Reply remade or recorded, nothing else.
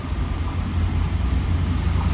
recorded